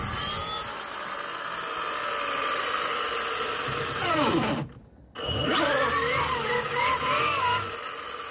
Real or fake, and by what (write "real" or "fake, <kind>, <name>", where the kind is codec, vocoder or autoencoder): real